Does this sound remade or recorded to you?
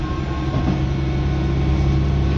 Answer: recorded